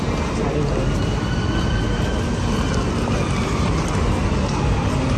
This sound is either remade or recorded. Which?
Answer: recorded